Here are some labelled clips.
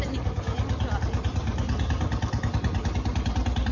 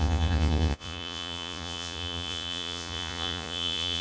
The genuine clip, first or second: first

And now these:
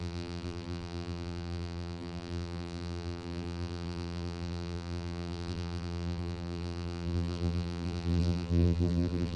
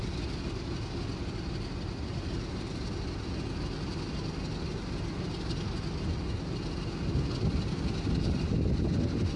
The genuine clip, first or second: second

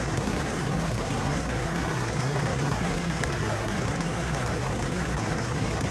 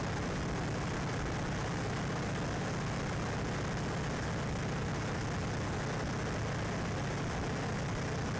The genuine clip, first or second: second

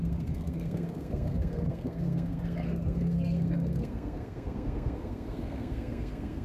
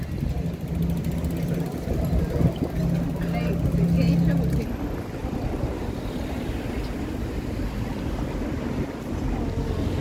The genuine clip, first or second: second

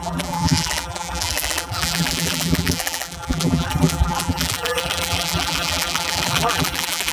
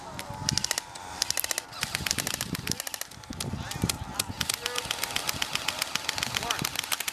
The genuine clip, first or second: second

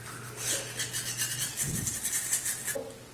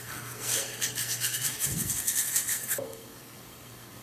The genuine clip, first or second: first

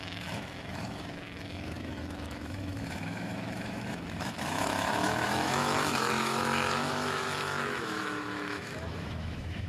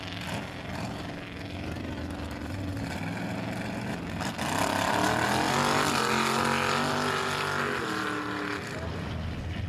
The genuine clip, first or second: second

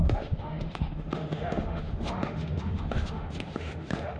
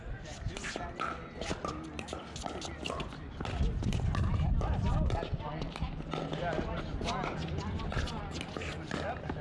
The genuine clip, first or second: second